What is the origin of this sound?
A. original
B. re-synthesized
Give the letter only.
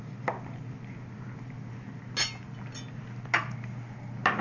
A